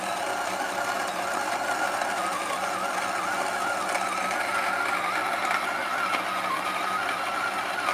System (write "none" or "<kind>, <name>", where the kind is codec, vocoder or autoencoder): none